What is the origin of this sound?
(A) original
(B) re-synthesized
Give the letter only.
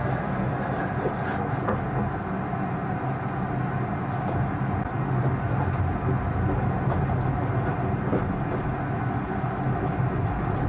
A